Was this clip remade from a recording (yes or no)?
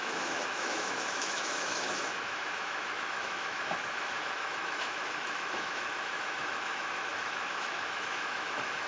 yes